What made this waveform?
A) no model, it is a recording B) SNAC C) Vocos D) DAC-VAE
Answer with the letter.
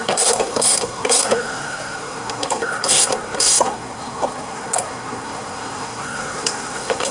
B